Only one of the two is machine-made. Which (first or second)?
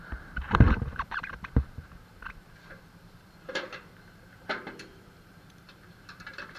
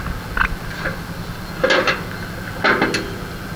first